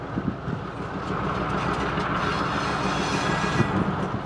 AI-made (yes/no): no